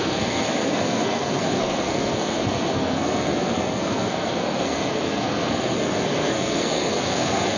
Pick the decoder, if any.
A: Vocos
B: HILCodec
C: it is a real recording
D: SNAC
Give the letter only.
D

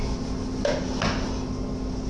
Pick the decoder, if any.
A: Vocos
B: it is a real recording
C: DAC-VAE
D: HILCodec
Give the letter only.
B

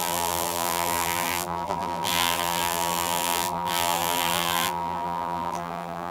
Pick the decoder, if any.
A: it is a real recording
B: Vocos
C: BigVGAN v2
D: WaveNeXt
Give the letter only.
C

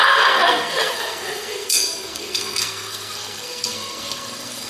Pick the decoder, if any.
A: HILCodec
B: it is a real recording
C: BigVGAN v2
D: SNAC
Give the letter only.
D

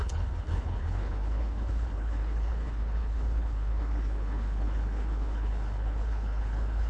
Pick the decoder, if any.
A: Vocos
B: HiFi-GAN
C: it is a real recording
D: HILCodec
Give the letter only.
D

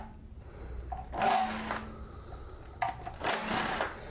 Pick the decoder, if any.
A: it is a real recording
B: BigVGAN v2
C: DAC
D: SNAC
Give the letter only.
A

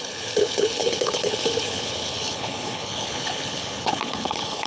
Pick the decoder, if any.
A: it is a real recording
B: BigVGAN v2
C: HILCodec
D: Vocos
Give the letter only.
C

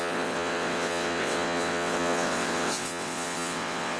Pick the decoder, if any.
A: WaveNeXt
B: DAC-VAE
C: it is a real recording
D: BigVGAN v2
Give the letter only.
A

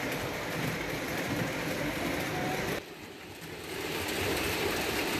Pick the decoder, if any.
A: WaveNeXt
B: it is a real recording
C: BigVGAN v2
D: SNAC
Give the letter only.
C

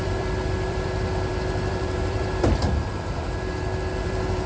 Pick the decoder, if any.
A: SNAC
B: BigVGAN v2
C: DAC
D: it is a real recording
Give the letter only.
B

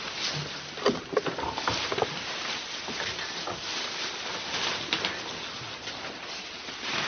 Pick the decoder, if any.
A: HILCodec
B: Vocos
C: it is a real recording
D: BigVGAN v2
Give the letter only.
C